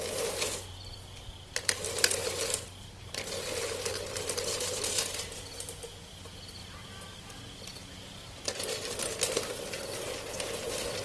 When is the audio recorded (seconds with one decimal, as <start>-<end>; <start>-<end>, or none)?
0.0-2.2; 3.3-11.0